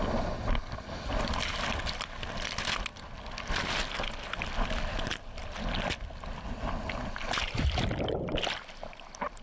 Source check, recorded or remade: recorded